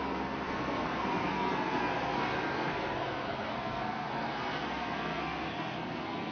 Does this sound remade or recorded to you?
remade